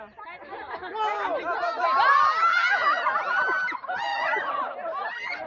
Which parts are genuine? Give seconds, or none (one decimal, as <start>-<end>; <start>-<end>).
0.0-4.1; 4.7-5.5